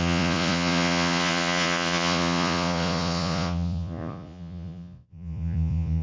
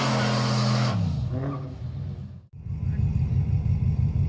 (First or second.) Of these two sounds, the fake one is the first